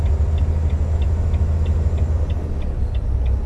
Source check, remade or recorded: recorded